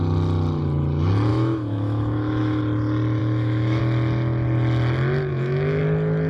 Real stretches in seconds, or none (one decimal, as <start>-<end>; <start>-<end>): 0.0-1.3; 2.6-3.2; 3.8-5.3; 5.8-6.3

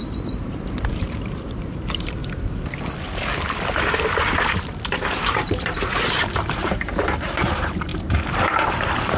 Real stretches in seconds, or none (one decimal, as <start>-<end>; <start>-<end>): 2.2-4.0; 7.9-8.5

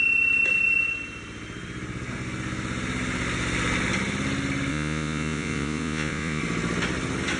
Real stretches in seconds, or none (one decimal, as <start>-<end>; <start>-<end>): 0.0-4.7; 6.4-7.4

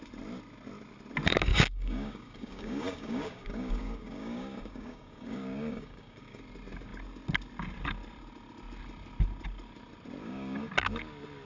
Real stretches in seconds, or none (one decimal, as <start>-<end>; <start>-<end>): 0.0-1.5; 6.4-10.2; 10.7-11.5

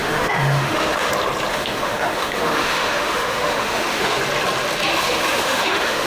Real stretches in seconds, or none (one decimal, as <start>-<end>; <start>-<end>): 1.1-1.5; 4.2-4.9

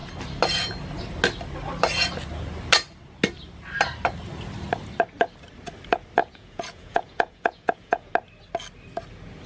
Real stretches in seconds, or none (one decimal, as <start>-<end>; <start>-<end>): 0.0-6.2; 8.1-9.5